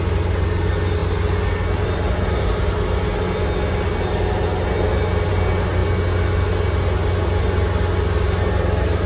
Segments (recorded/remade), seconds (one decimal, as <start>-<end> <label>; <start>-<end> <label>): 0.0-9.1 recorded